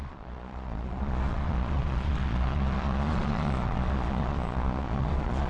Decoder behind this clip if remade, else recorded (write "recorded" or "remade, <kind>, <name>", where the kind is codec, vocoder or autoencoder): remade, vocoder, Vocos